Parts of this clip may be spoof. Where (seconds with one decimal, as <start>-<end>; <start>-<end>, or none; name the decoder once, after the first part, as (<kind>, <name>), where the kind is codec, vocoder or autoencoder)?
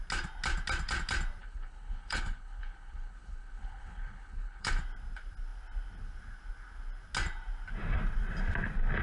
1.4-4.8 (codec, HILCodec)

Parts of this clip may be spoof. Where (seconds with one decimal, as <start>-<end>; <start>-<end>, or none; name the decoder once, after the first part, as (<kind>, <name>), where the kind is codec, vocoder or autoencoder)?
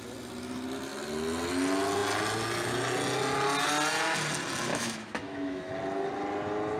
4.7-5.7 (autoencoder, DAC-VAE)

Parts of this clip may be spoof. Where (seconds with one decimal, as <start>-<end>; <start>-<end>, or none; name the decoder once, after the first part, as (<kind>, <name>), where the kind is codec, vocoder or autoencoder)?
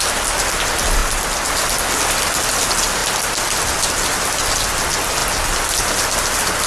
none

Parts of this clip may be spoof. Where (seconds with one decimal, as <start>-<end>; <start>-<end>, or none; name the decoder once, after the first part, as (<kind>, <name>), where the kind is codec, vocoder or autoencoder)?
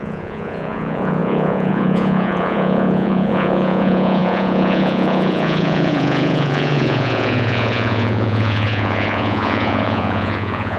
0.0-10.8 (vocoder, Vocos)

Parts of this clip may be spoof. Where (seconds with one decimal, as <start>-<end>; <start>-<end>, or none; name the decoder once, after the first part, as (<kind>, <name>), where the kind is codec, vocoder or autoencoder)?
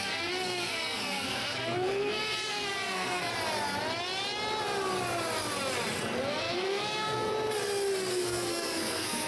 0.0-3.3 (codec, SNAC); 6.2-7.3; 8.1-9.3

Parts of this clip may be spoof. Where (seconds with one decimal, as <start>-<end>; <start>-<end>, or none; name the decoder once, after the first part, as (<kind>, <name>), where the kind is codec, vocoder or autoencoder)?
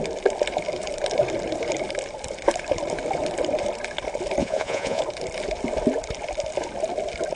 4.4-5.0 (vocoder, Vocos)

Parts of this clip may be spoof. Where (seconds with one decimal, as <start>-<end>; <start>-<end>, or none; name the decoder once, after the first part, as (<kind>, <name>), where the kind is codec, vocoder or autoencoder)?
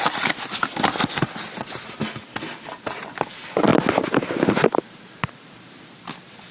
none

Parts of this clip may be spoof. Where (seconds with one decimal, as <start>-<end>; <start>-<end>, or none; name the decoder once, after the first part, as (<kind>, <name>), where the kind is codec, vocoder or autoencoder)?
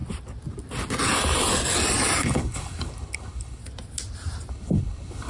2.2-3.6 (codec, HILCodec); 4.5-5.3